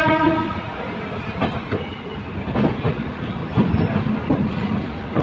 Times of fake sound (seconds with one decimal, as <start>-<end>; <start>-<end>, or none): 0.0-2.1; 2.9-3.4; 4.2-5.2